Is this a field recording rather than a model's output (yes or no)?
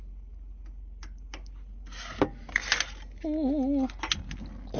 yes